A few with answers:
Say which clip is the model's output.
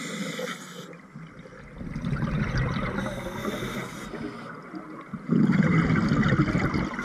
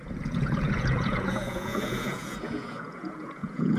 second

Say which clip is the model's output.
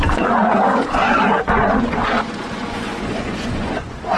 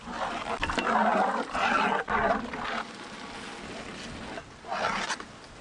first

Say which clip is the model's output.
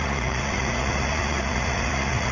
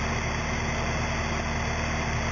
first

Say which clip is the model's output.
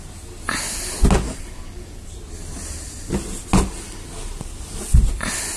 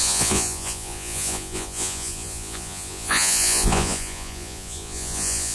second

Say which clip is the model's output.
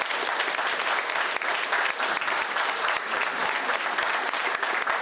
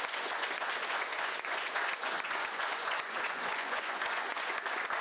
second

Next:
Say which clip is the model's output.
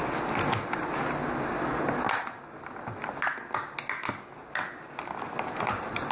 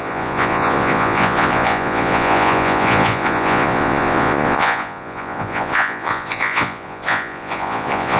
second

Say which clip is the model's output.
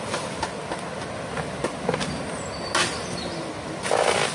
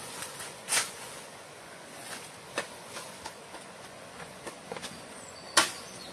second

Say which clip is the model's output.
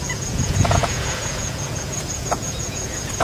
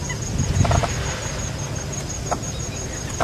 first